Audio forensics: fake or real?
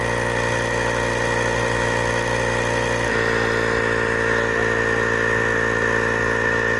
real